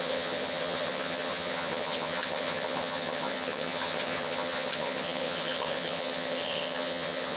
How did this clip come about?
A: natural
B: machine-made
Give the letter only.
B